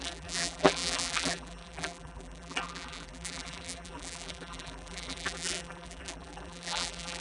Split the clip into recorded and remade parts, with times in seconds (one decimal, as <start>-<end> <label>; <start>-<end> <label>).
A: 0.0-7.2 remade